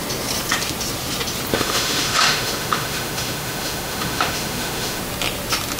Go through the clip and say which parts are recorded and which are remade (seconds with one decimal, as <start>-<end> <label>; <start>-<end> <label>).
0.0-1.5 recorded; 1.5-5.0 remade; 5.0-5.8 recorded